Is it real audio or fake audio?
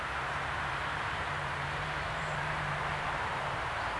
fake